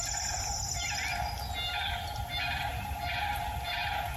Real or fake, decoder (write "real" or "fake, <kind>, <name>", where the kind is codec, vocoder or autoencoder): real